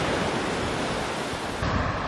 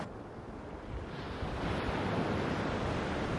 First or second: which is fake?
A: first